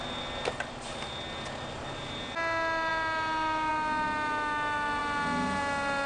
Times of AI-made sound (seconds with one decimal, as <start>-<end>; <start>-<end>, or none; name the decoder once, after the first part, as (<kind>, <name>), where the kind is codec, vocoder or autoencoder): none

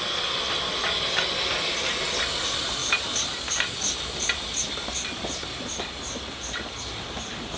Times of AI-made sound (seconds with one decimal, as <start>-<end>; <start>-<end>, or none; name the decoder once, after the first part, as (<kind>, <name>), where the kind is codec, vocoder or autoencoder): none

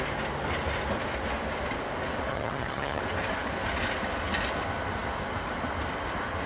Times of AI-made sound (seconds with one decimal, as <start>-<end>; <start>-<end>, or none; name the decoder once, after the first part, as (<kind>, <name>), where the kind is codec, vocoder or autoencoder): 2.3-3.0 (vocoder, HiFi-GAN)

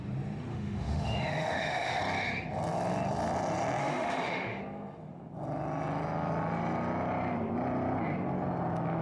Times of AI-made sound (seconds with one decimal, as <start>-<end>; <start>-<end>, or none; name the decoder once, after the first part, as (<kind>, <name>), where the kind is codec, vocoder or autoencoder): 0.5-2.0 (autoencoder, DAC-VAE); 3.8-4.6